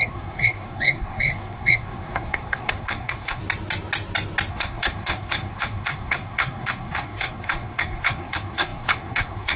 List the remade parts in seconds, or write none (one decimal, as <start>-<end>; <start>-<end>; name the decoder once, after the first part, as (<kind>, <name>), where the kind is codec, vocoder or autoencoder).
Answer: 0.0-3.4 (codec, SNAC); 4.5-9.6